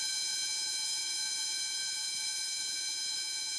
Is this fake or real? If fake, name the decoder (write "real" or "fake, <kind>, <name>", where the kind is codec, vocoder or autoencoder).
fake, vocoder, Vocos